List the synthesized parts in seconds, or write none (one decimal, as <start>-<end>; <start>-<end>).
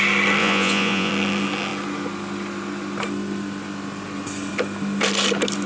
0.4-1.1